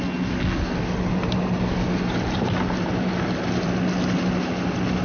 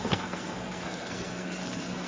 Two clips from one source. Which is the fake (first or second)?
second